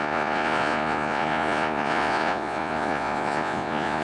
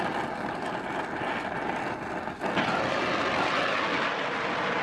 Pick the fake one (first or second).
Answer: first